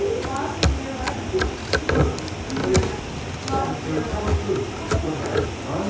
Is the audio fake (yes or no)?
no